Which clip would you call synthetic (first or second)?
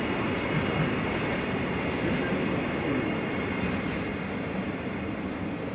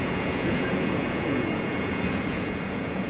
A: second